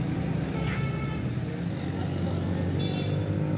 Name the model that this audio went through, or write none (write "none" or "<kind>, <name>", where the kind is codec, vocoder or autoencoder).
none